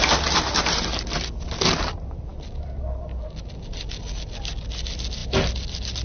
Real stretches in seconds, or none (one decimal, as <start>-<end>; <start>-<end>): 0.0-6.0